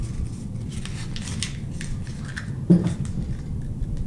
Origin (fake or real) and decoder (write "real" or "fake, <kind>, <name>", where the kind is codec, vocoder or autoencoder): real